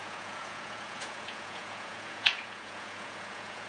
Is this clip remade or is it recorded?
remade